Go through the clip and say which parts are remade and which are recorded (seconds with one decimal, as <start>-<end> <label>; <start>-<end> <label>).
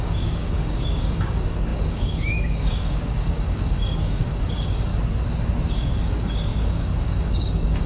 0.0-4.9 remade; 4.9-5.7 recorded; 5.7-7.9 remade